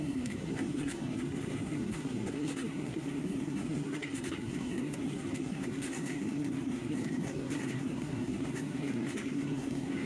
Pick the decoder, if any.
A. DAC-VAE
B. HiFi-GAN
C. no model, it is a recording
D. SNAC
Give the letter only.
D